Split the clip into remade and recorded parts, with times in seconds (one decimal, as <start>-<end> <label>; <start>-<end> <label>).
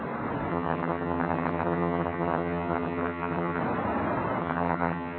0.0-0.5 recorded; 0.5-3.6 remade; 3.6-4.4 recorded; 4.4-5.2 remade